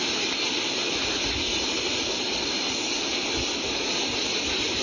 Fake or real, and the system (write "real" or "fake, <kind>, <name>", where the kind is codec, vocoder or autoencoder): real